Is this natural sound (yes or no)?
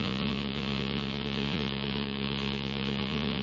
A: no